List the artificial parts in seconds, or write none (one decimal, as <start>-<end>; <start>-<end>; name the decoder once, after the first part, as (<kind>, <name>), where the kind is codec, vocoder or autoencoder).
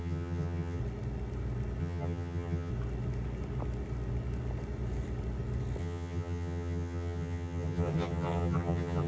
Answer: 0.0-0.8 (vocoder, HiFi-GAN); 1.8-2.7; 5.8-9.1